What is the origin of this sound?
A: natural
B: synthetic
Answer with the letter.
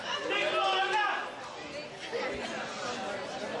A